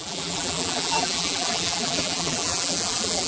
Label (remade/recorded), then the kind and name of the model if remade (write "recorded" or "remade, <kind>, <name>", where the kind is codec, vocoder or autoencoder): remade, vocoder, BigVGAN v2